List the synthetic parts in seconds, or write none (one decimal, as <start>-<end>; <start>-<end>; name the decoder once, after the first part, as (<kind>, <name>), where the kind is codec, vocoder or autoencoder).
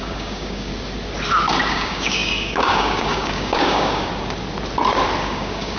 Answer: 0.0-0.7 (codec, DAC); 1.7-4.1; 5.2-5.8